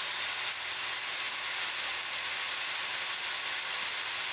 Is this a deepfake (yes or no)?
no